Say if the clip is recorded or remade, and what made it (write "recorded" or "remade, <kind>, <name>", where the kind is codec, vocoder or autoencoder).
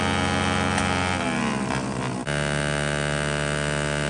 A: recorded